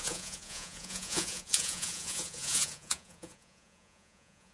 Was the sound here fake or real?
fake